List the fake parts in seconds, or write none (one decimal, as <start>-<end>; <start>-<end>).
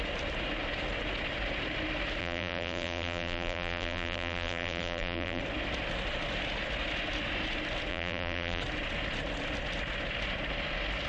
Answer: 2.2-5.4; 7.9-8.6